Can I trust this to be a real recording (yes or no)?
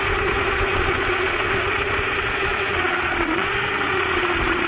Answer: no